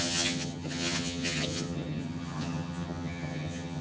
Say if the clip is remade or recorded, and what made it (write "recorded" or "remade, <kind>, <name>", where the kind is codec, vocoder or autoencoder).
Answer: remade, vocoder, HiFi-GAN